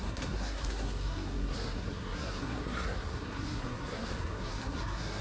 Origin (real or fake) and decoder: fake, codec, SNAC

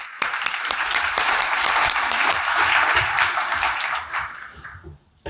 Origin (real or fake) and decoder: fake, vocoder, BigVGAN v2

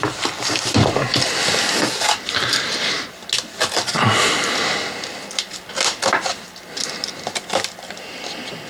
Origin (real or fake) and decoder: real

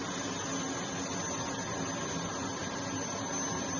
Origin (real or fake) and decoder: real